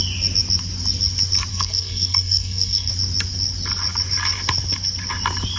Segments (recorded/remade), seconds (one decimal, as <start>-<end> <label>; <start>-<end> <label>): 0.0-1.5 recorded; 1.5-2.9 remade; 2.9-5.6 recorded